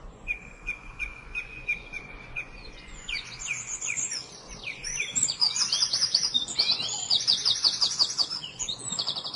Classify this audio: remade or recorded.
remade